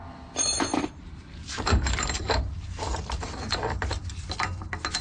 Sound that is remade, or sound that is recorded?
recorded